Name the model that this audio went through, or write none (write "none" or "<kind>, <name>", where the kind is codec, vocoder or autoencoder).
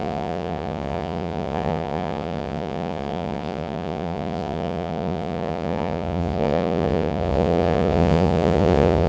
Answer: vocoder, Vocos